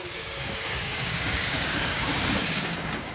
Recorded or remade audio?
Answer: remade